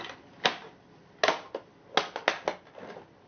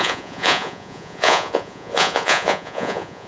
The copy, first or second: second